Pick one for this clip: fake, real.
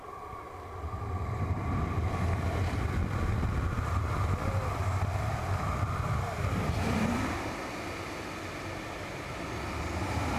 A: real